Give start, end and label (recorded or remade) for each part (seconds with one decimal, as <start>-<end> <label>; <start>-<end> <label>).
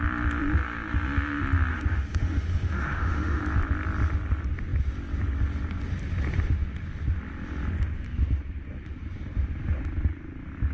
0.0-1.7 recorded; 1.7-3.4 remade; 3.4-10.7 recorded